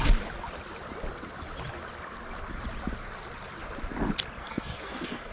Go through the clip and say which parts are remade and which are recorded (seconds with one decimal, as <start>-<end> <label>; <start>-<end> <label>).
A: 0.0-4.4 recorded; 4.4-5.3 remade